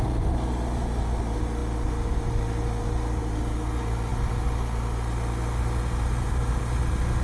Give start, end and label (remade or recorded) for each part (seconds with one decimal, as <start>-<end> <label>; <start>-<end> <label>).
0.0-7.2 recorded